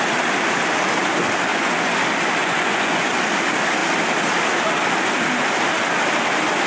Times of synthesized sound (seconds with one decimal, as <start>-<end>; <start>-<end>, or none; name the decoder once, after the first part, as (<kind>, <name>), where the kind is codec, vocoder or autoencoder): 1.5-2.0 (vocoder, Vocos); 2.4-3.1